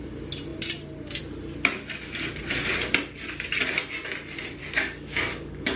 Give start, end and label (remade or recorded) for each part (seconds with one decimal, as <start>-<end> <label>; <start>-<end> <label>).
0.0-4.6 recorded; 4.6-5.8 remade